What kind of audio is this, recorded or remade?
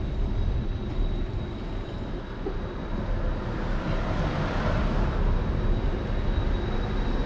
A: recorded